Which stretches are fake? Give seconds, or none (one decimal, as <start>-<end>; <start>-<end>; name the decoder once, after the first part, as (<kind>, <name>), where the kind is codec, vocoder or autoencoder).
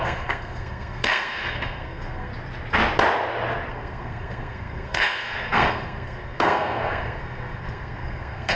0.0-2.3 (codec, SNAC); 3.7-8.6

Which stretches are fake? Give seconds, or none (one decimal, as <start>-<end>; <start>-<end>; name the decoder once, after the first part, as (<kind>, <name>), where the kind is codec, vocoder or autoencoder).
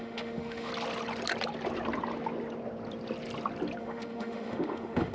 0.0-0.7 (autoencoder, DAC-VAE); 3.8-5.1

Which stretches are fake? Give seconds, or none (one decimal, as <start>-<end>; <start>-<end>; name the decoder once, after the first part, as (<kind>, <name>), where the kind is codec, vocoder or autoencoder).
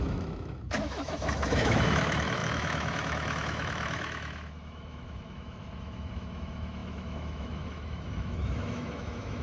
0.0-9.4 (autoencoder, DAC-VAE)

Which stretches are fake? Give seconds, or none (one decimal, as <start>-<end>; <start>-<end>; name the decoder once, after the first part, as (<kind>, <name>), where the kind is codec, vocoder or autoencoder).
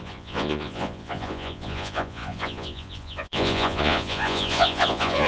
0.0-5.3 (vocoder, Vocos)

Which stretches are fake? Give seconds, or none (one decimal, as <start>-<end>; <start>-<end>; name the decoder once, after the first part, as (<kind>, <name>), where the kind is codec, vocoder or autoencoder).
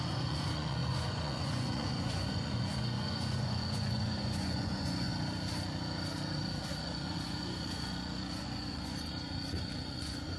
0.0-5.1 (vocoder, Vocos); 6.8-10.4